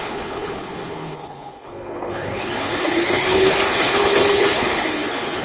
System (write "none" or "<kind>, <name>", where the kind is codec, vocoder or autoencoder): codec, HILCodec